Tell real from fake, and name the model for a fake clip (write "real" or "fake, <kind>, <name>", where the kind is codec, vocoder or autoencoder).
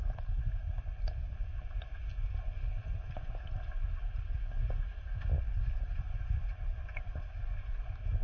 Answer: real